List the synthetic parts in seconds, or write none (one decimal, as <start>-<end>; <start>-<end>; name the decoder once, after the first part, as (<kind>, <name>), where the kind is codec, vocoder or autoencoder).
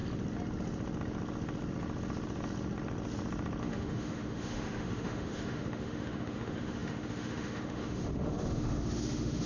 3.6-9.5 (autoencoder, DAC-VAE)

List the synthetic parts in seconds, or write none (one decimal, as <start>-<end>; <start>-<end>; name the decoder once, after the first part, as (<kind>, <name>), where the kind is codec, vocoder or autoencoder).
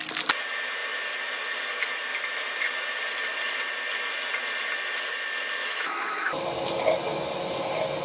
5.6-6.3 (autoencoder, DAC-VAE)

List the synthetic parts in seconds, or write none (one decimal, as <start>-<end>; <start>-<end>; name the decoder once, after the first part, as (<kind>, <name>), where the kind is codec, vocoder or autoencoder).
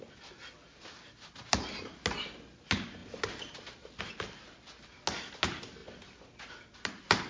none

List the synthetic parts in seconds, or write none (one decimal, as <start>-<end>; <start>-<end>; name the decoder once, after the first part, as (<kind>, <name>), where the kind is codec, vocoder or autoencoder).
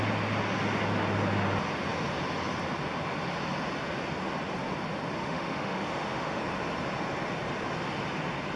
5.2-6.4 (autoencoder, DAC-VAE)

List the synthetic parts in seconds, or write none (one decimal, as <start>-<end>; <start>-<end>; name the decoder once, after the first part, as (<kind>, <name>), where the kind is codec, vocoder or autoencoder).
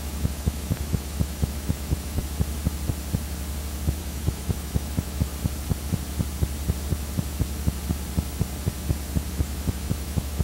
0.0-2.2 (autoencoder, DAC-VAE); 4.0-5.3; 9.3-10.4